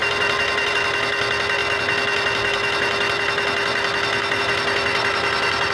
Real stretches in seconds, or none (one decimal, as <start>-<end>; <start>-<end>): 0.0-5.7